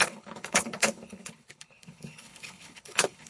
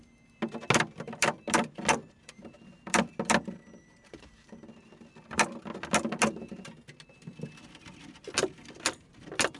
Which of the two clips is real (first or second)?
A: second